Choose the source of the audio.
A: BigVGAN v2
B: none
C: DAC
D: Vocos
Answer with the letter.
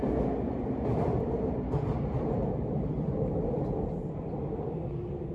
B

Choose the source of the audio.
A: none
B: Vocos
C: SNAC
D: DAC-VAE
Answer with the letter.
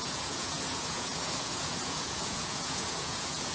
B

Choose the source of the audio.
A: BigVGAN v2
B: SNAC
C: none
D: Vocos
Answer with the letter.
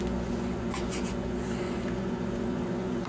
D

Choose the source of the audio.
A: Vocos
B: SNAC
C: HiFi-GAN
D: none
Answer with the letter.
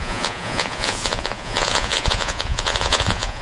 A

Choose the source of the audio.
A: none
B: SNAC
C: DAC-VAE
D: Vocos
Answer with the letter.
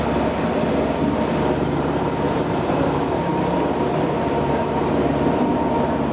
A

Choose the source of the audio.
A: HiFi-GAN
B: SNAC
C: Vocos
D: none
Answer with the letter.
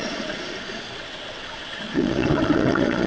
C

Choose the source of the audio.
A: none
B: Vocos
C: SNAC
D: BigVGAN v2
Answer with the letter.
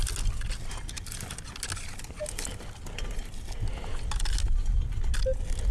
A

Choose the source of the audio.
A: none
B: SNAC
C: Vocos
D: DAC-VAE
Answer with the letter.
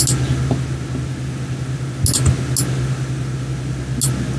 A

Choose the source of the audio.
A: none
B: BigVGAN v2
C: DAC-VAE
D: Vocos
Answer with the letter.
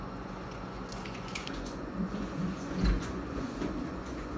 D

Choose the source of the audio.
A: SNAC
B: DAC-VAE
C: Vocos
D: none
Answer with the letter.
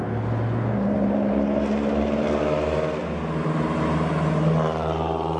D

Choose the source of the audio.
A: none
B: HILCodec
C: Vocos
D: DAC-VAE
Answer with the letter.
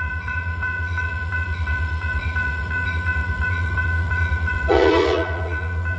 C